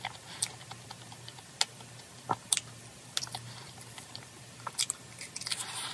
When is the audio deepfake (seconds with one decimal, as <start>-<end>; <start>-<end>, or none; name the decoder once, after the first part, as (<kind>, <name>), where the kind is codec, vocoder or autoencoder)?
none